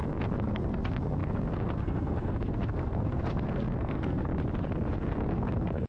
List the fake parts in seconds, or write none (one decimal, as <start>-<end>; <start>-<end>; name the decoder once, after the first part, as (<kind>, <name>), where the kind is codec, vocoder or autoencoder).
0.0-4.3 (codec, SNAC); 4.9-5.9

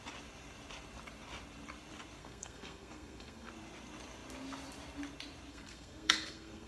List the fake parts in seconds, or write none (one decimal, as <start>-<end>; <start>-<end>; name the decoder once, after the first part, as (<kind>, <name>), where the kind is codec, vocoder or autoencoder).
2.2-3.5 (codec, SNAC); 5.5-6.7

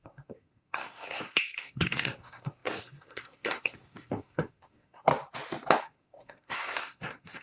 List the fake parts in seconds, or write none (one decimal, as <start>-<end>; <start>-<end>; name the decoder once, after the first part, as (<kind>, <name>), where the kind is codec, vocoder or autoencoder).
0.0-5.1 (codec, SNAC); 5.8-7.4

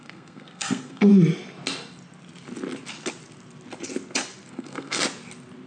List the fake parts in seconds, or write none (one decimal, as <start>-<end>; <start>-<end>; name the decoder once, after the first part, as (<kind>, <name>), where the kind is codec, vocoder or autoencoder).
0.0-1.1 (codec, SNAC); 4.5-5.0

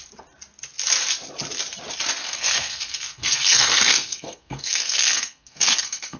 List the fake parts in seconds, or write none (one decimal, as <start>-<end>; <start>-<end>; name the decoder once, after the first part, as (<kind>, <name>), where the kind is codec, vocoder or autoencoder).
2.2-6.2 (codec, SNAC)